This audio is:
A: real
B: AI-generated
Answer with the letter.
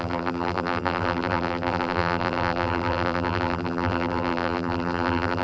B